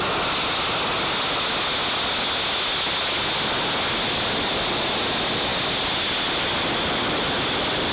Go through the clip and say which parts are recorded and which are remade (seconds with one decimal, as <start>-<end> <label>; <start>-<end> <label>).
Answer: 0.0-7.9 recorded